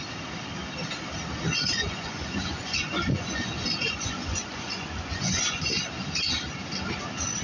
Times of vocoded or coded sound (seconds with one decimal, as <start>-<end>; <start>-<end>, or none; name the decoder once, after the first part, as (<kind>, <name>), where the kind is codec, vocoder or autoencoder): 1.5-5.6 (vocoder, Vocos)